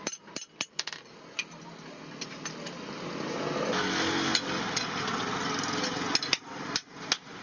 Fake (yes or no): no